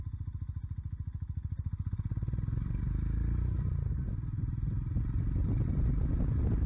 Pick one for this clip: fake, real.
real